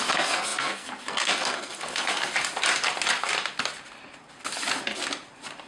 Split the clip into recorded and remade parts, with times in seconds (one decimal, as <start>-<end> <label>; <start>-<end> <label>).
0.0-2.3 remade; 2.3-5.7 recorded